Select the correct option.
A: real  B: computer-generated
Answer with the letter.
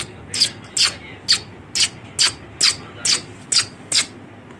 A